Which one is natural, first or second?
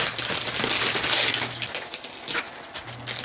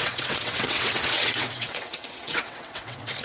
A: first